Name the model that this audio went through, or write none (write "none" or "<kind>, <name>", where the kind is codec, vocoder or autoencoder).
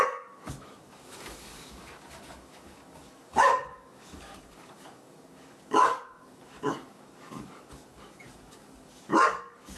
codec, DAC